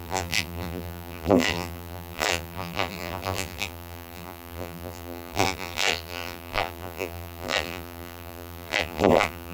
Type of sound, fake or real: fake